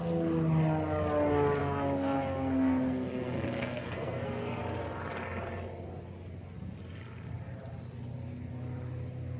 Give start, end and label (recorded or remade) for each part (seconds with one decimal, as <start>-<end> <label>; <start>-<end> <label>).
0.0-1.6 recorded; 1.6-4.6 remade; 4.6-9.4 recorded